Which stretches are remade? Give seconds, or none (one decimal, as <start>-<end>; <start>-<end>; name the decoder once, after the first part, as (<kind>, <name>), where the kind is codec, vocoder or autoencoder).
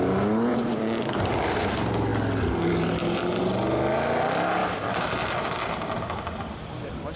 0.5-1.7 (vocoder, BigVGAN v2); 4.6-7.2